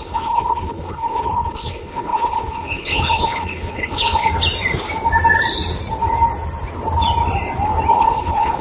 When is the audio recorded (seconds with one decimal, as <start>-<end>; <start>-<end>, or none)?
4.3-7.9